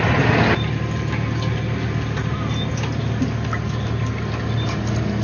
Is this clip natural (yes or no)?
yes